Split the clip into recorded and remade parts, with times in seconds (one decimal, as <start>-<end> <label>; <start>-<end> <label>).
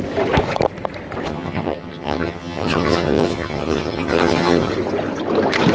0.0-1.3 recorded; 1.3-4.7 remade; 4.7-5.7 recorded